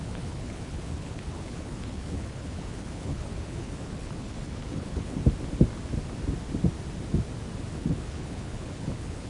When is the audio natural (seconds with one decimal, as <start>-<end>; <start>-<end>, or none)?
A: 5.2-7.7